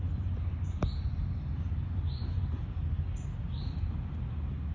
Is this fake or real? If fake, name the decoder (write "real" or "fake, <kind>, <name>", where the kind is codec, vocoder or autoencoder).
real